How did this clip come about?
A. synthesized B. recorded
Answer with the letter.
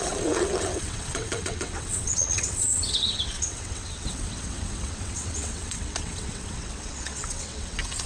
A